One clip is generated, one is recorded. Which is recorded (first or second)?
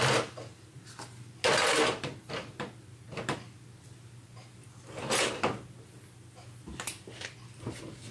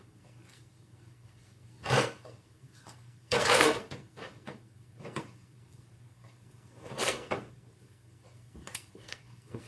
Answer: first